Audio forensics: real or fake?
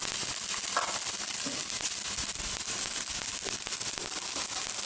real